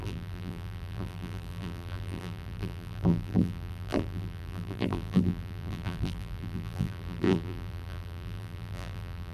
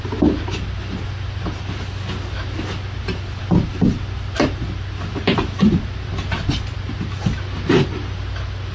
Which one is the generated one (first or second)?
first